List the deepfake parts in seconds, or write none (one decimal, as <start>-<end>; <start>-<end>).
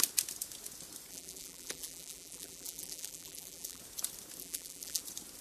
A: 1.1-3.8; 4.4-5.0